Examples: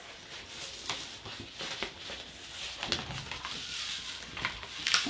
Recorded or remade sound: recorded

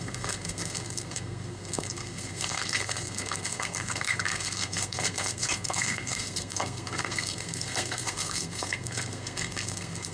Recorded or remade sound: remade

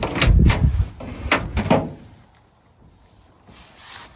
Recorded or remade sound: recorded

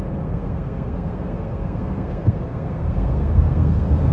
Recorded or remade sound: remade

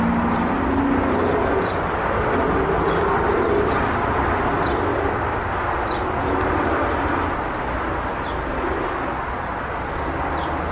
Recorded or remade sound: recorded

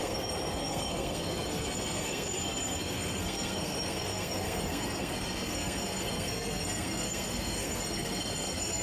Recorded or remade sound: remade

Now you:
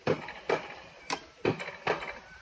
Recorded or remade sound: recorded